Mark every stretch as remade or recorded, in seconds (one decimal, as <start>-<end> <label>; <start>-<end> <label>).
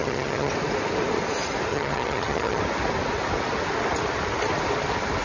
0.0-0.5 remade; 0.5-1.7 recorded; 1.7-2.6 remade; 2.6-5.2 recorded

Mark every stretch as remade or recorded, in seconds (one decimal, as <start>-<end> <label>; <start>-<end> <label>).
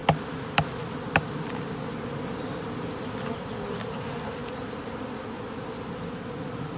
0.0-6.8 recorded